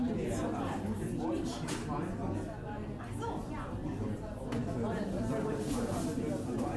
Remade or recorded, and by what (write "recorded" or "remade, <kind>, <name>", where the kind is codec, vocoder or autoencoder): recorded